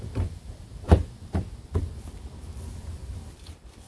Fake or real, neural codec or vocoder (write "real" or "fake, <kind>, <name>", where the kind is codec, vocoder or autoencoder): fake, vocoder, BigVGAN v2